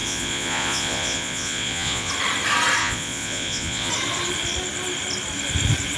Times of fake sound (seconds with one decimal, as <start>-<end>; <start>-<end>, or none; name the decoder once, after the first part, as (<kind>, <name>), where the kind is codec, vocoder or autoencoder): 0.0-2.1 (vocoder, Vocos); 2.8-3.9

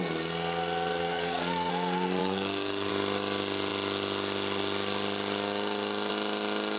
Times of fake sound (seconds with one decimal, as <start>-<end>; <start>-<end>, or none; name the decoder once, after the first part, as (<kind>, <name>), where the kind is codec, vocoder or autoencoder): 0.9-1.7 (codec, DAC); 2.2-2.9

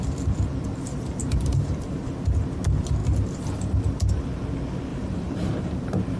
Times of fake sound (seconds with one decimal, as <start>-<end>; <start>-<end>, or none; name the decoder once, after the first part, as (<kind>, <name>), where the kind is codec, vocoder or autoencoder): 1.2-2.1 (vocoder, BigVGAN v2); 4.9-5.8

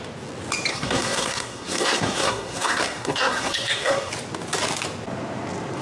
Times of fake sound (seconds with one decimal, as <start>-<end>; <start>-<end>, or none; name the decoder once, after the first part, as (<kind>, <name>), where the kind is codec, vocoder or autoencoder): 0.7-4.1 (codec, SNAC)

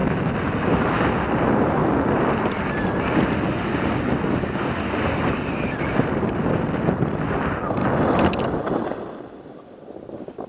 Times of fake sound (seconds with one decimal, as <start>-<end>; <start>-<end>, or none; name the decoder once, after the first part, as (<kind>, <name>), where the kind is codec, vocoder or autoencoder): none

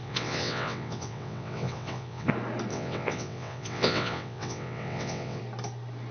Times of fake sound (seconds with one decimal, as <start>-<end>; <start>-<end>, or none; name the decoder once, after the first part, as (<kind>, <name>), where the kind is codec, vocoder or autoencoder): 0.0-2.3 (vocoder, WaveNeXt); 2.7-5.4